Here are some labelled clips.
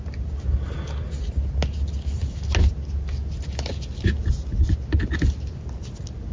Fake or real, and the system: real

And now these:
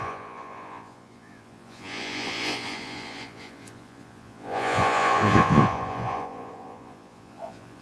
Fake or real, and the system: fake, vocoder, Vocos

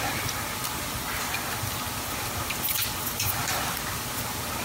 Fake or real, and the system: real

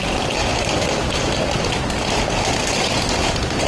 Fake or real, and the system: real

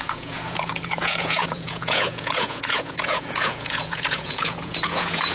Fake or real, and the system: fake, vocoder, Vocos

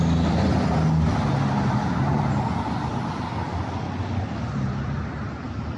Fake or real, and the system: real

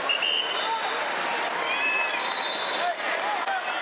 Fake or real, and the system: real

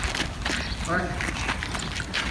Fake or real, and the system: real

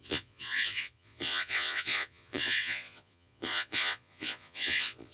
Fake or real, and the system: fake, vocoder, Vocos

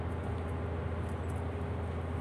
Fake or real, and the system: real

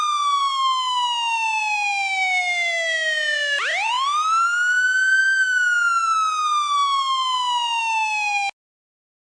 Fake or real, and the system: real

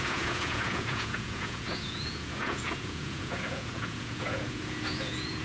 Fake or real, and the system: fake, vocoder, Vocos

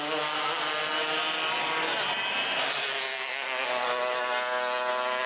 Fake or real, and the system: real